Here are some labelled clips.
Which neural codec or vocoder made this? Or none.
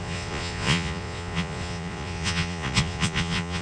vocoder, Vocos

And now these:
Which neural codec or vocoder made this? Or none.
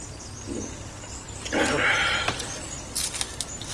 none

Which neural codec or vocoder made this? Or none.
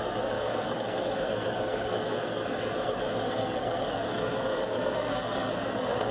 codec, SNAC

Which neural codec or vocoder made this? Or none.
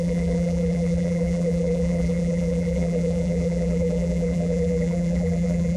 vocoder, BigVGAN v2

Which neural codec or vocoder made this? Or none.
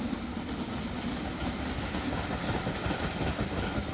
none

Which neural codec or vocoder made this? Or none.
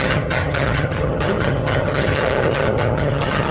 vocoder, HiFi-GAN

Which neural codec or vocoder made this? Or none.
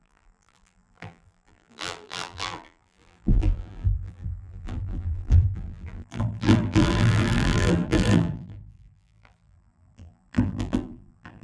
vocoder, BigVGAN v2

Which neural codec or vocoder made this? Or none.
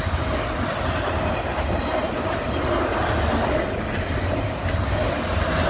none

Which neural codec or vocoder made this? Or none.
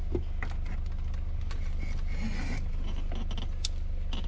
none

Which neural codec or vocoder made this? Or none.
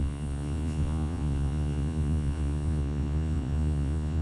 vocoder, Vocos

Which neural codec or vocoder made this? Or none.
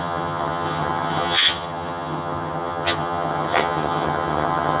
vocoder, HiFi-GAN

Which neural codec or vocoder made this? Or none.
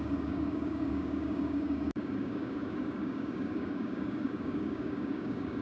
codec, DAC